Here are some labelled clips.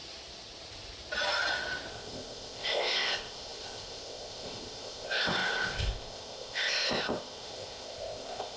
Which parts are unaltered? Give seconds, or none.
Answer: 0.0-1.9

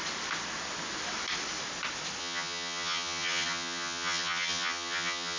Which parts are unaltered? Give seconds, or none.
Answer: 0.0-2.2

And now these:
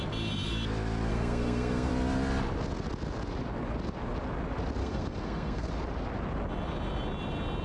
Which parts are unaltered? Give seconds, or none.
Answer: 0.0-1.1; 1.9-4.8; 5.7-7.6